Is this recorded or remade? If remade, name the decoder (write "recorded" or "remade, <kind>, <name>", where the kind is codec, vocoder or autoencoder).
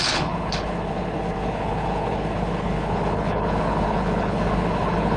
remade, codec, HILCodec